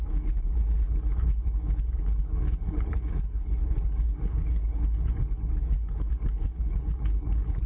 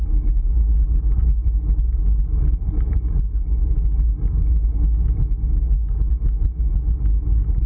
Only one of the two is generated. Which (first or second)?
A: first